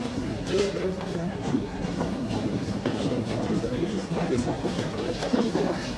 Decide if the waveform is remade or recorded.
remade